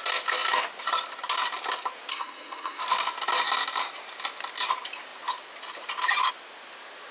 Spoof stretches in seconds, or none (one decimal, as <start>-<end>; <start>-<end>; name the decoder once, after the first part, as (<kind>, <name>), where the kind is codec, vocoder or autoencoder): 2.1-2.8 (codec, SNAC)